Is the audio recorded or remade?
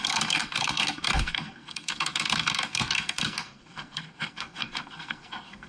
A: remade